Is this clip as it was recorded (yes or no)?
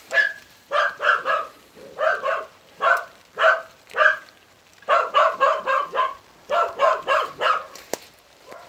no